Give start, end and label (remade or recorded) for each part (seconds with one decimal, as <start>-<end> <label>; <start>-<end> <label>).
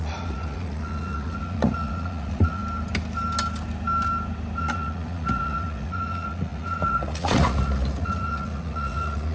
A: 0.0-2.6 remade; 2.6-4.6 recorded; 4.6-9.3 remade